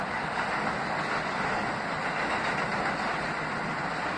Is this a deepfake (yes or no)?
no